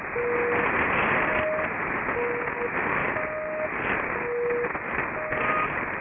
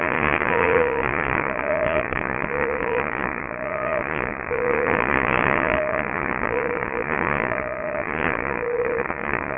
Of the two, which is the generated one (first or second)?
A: second